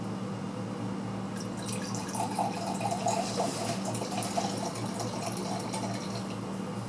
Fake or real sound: real